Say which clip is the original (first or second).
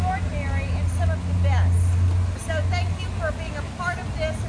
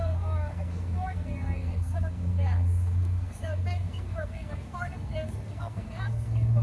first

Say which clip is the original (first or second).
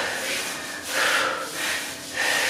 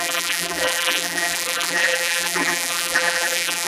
first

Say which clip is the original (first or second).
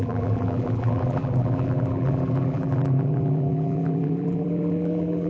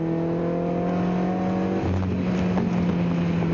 second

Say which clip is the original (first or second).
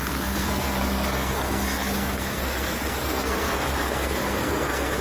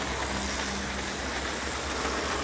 second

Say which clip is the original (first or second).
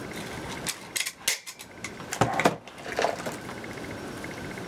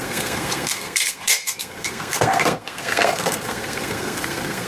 first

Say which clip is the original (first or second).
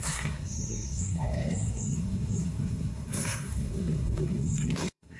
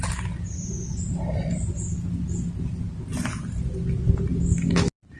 second